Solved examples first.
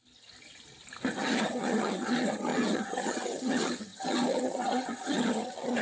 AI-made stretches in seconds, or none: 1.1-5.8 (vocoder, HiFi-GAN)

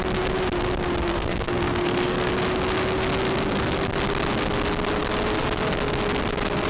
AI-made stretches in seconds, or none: 1.1-2.3 (codec, SNAC)

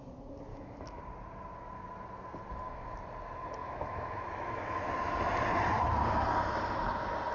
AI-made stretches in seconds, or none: 0.5-1.0 (autoencoder, DAC-VAE); 3.6-4.8

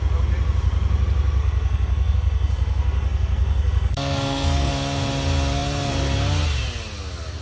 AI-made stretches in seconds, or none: 1.4-4.7 (codec, SNAC)

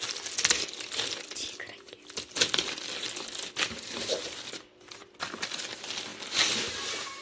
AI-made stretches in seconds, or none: none